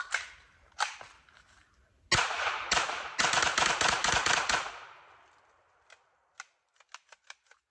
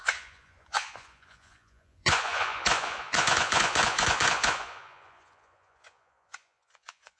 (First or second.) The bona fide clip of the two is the first